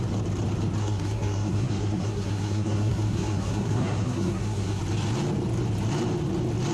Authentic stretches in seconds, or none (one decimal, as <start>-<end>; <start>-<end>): 0.0-0.8; 4.8-6.7